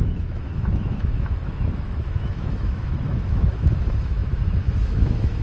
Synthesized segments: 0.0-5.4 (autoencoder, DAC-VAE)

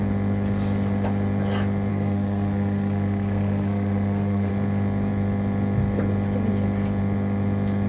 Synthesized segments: 1.9-4.5 (codec, SNAC)

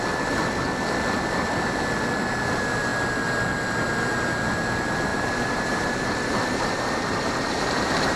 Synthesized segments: 5.1-8.2 (vocoder, BigVGAN v2)

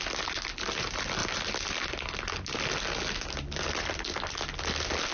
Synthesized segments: none

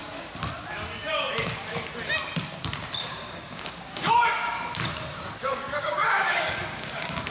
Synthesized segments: 1.4-1.9 (codec, DAC); 3.0-4.1; 5.4-7.3

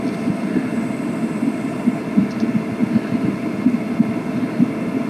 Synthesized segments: 0.7-2.0 (vocoder, BigVGAN v2)

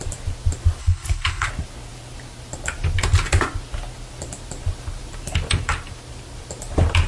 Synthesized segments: 0.8-1.5 (codec, HILCodec)

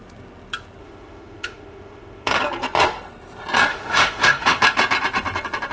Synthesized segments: 0.8-2.4 (autoencoder, DAC-VAE); 3.7-4.6